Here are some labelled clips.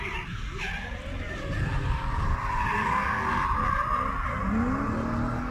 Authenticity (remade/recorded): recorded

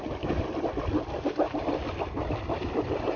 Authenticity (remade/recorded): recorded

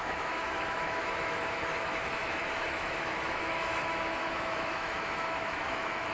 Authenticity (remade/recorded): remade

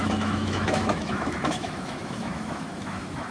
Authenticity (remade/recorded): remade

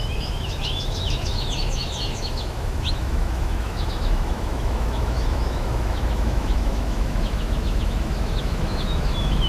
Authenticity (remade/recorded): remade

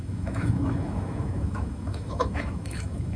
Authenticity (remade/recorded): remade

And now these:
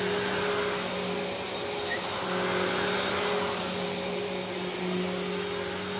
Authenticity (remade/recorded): recorded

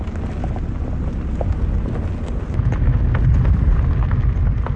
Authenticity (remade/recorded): recorded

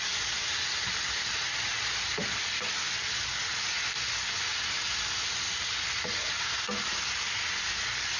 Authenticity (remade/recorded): recorded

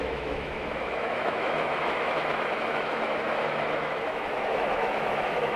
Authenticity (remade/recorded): remade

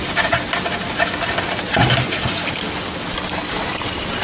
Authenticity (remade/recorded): recorded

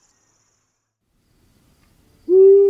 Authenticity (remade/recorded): recorded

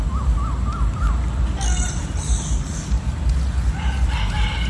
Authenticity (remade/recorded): recorded